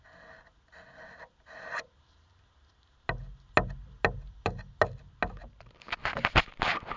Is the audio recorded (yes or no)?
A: yes